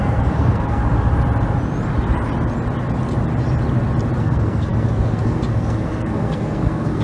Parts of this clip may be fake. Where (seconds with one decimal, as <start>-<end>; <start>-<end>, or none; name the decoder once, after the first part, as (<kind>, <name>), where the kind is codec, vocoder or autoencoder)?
0.0-0.8 (codec, SNAC); 4.2-7.0